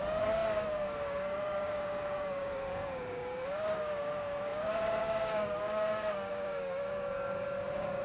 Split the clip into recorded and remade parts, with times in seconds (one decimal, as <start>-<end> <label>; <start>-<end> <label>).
0.0-8.0 remade